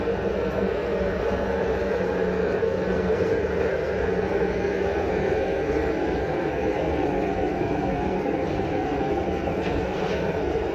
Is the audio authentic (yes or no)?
no